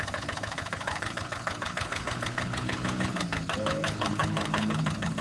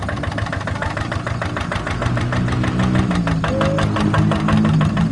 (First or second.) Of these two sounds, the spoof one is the first